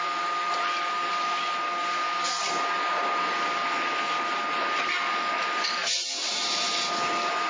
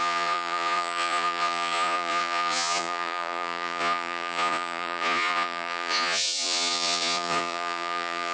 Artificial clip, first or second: second